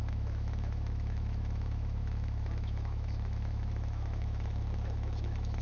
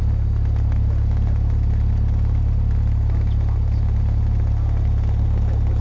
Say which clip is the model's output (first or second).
first